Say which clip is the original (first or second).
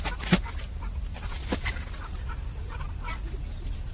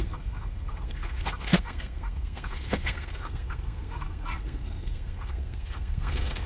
first